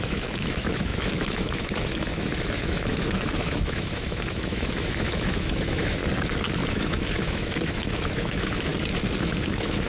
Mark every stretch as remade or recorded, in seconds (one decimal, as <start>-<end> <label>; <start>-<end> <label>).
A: 0.0-6.0 remade; 6.0-6.7 recorded; 6.7-8.7 remade; 8.7-9.2 recorded; 9.2-9.9 remade